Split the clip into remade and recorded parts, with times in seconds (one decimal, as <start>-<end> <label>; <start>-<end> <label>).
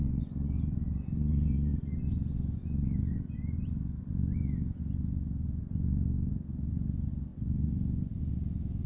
0.0-8.9 remade